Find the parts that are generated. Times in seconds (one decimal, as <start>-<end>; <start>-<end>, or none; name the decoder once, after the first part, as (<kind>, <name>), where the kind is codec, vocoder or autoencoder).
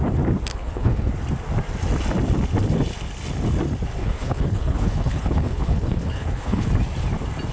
0.5-1.1 (codec, HILCodec); 4.0-6.7